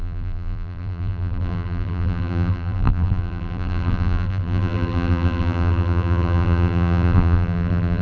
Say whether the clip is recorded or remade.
remade